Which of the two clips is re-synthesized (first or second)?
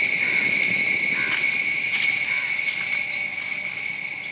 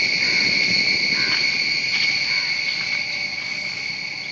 first